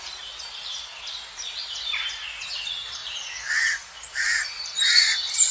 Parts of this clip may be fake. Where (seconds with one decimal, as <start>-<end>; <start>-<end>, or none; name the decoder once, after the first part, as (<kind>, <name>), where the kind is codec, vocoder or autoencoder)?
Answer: 0.0-3.0 (vocoder, BigVGAN v2); 3.6-5.5